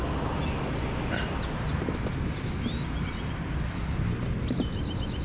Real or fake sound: real